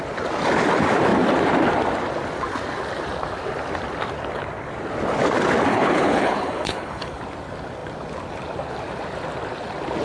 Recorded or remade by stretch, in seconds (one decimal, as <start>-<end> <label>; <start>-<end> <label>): 0.0-5.7 recorded; 5.7-7.2 remade; 7.2-10.0 recorded